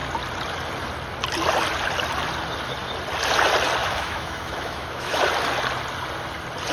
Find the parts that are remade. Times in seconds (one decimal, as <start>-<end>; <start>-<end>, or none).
3.8-5.2